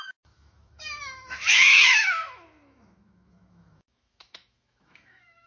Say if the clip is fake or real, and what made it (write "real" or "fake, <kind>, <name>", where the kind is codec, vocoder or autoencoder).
fake, autoencoder, DAC-VAE